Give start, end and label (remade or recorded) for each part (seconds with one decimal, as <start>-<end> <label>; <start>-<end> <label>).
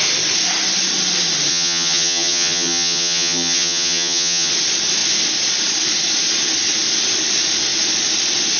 0.0-1.5 recorded; 1.5-4.5 remade; 4.5-8.6 recorded